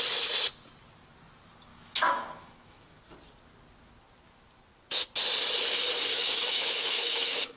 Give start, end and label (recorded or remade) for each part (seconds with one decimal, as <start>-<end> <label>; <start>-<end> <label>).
0.0-1.7 recorded; 1.7-3.0 remade; 3.0-6.1 recorded; 6.1-7.6 remade